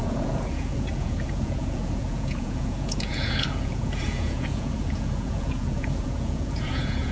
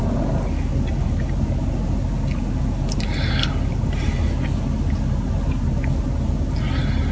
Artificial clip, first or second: first